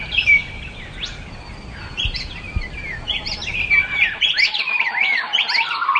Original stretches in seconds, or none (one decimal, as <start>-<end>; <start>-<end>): 0.0-6.0